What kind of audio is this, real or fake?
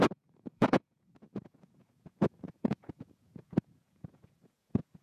fake